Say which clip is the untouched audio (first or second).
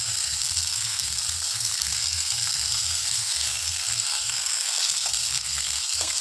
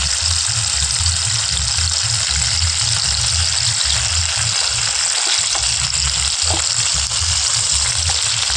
second